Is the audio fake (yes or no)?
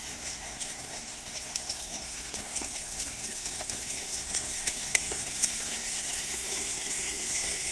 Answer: yes